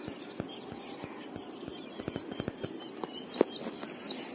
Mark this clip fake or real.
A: real